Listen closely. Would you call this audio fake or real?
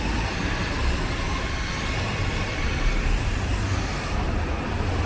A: real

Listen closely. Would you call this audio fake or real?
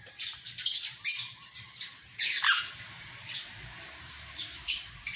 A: fake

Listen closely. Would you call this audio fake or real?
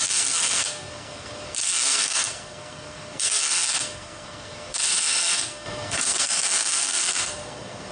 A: fake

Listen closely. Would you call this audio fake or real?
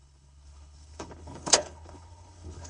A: fake